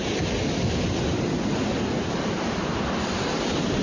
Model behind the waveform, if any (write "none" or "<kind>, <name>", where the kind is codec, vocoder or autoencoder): none